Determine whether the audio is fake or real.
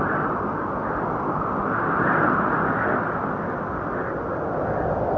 real